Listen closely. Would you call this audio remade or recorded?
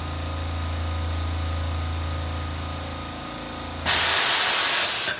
recorded